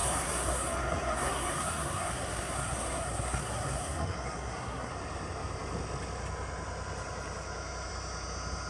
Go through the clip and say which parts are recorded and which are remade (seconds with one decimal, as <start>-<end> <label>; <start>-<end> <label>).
0.0-4.9 remade; 4.9-8.7 recorded